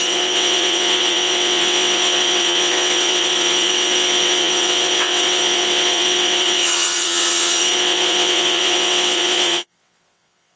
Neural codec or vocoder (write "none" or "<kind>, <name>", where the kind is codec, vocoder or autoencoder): vocoder, WaveNeXt